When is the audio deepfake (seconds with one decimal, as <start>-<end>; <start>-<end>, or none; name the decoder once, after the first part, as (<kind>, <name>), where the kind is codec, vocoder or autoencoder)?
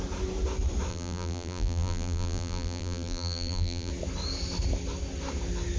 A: 0.9-3.9 (vocoder, BigVGAN v2)